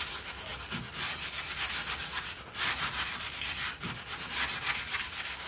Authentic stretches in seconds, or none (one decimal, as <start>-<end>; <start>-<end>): 0.0-0.5; 1.4-5.5